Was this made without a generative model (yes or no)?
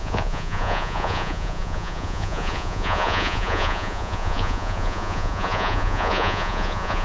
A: no